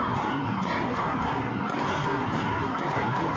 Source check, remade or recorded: remade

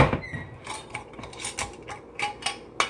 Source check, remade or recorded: recorded